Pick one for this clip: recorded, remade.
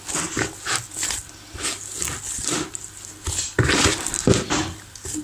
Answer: recorded